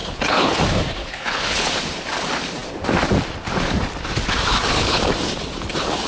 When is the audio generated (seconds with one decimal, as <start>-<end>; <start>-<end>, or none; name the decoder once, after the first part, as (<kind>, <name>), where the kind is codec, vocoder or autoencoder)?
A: 0.0-0.6 (codec, HILCodec); 1.0-1.7; 4.5-5.0